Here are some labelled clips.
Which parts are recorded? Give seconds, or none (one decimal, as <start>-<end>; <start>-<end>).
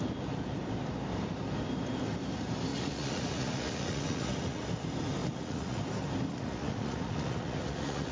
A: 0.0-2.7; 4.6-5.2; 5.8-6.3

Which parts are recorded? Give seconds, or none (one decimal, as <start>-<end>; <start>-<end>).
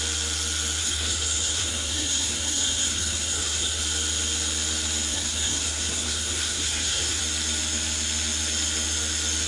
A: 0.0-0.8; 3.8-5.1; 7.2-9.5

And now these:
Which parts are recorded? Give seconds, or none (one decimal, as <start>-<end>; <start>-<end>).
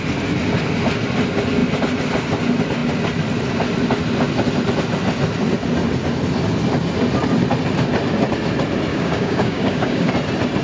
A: 0.0-8.9; 10.1-10.6